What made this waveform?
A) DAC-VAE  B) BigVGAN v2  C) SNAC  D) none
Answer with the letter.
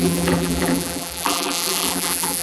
B